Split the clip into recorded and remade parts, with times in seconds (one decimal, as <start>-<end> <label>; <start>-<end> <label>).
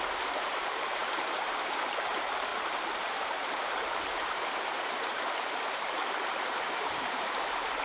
0.0-7.8 remade